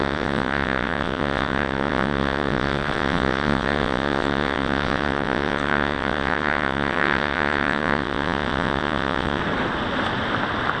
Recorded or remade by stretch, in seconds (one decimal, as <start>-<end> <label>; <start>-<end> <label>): 0.0-9.4 remade; 9.4-10.8 recorded